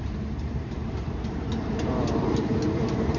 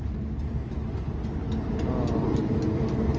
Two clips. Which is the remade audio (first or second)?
first